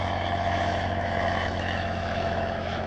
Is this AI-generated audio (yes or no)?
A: yes